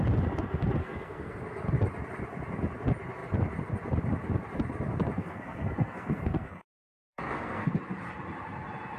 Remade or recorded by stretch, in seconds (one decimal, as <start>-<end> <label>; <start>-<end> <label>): 0.0-0.8 recorded; 0.8-1.4 remade; 1.4-5.2 recorded; 5.2-7.7 remade; 7.7-9.0 recorded